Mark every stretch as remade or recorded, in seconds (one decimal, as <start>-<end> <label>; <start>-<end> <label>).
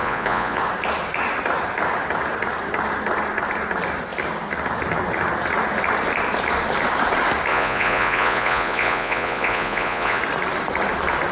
0.0-0.6 remade; 0.6-7.5 recorded; 7.5-10.2 remade; 10.2-11.3 recorded